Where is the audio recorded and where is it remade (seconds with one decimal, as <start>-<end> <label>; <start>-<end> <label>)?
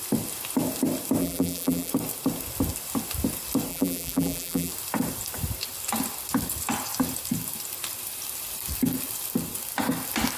0.0-1.2 recorded; 1.2-1.9 remade; 1.9-3.7 recorded; 3.7-4.7 remade; 4.7-10.4 recorded